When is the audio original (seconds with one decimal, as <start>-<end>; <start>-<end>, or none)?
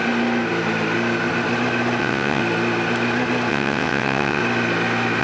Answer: 0.0-2.0; 2.4-3.5; 4.4-5.2